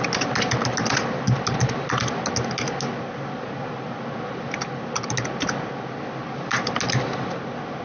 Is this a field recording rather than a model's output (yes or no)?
yes